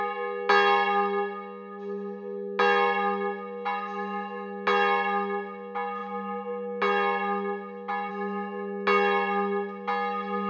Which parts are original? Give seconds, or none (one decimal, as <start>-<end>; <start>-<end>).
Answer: 0.0-10.5